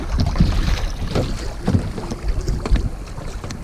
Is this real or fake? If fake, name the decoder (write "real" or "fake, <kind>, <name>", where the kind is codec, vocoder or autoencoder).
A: real